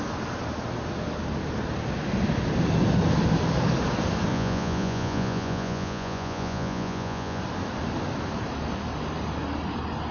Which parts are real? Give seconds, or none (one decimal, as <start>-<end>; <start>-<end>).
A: 0.0-4.3; 7.4-10.1

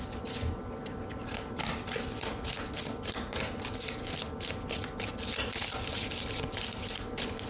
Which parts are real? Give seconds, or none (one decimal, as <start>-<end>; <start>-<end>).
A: 0.0-7.5

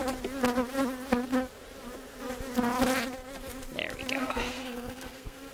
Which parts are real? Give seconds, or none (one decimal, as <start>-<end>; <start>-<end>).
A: 0.0-4.2

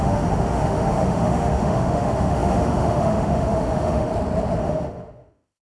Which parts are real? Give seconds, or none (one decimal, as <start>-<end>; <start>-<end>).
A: 4.1-4.6

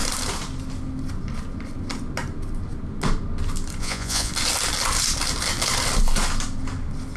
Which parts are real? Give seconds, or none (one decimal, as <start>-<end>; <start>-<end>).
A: 0.0-3.8; 4.3-7.2

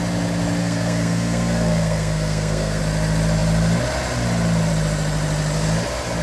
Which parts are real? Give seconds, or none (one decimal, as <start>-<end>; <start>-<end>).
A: 0.0-0.6; 2.8-6.2

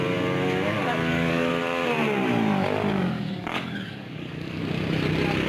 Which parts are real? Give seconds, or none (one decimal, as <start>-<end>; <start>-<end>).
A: 0.0-0.7; 1.5-2.9; 4.6-5.5